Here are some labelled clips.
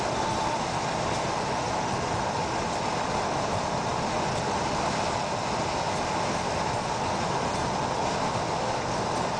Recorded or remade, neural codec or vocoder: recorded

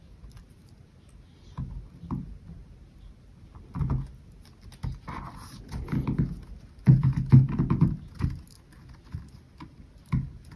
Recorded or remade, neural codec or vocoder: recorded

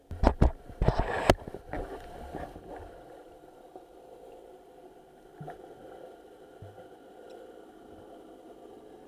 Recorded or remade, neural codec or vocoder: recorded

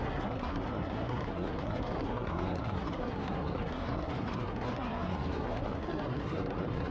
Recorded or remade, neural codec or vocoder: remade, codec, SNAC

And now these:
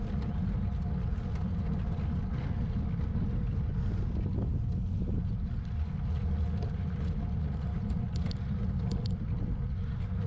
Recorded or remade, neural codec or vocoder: recorded